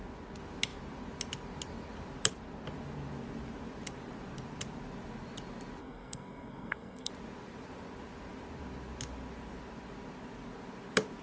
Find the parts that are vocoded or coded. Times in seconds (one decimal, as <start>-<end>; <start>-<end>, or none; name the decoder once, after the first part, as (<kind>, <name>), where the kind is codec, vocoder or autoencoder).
5.8-7.1 (codec, SNAC)